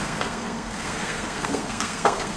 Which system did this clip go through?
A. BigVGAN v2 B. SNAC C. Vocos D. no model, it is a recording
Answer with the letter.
B